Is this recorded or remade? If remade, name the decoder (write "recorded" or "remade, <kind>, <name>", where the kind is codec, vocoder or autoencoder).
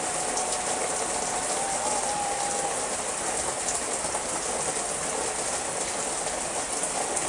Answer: recorded